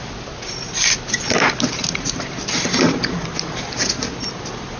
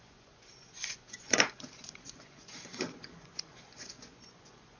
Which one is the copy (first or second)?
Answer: second